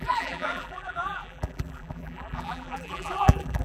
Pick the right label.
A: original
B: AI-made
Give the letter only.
B